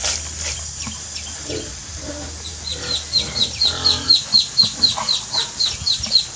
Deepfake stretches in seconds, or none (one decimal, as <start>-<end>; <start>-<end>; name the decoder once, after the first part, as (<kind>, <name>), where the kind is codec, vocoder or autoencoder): none